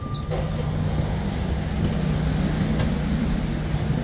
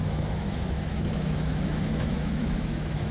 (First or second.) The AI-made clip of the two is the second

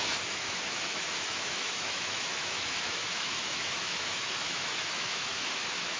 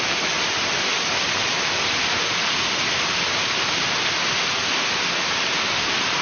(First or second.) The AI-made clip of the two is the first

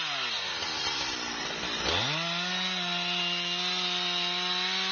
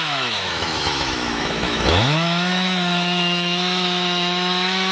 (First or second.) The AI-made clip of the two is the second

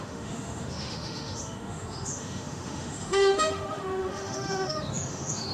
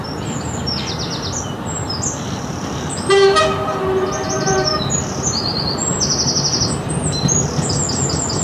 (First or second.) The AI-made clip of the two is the first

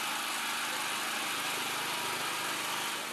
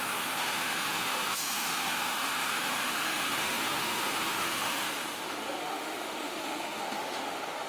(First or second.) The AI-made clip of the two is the second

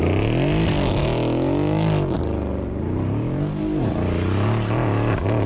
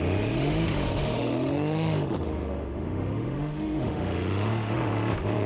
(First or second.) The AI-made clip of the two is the second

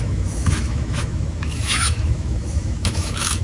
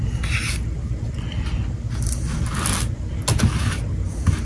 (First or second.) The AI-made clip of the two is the first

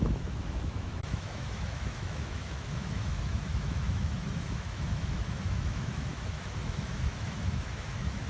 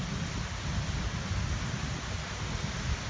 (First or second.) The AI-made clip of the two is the first